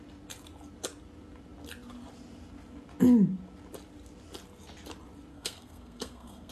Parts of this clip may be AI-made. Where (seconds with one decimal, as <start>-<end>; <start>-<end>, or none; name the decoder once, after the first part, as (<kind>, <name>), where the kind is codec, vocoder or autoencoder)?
5.3-6.5 (codec, SNAC)